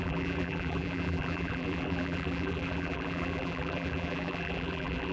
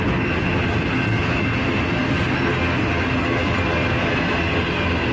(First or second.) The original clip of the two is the second